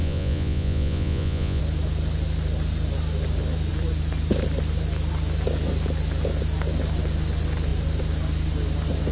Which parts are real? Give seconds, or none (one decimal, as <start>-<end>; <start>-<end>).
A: 1.6-9.1